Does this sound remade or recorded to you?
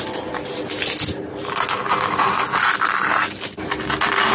recorded